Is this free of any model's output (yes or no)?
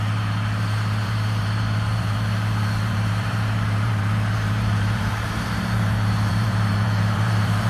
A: no